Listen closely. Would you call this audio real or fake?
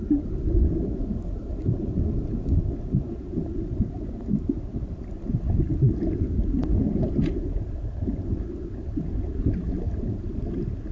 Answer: real